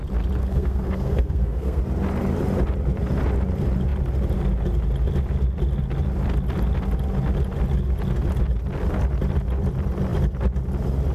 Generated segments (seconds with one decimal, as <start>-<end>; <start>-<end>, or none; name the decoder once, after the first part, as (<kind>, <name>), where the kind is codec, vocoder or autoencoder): 0.4-1.8 (codec, SNAC)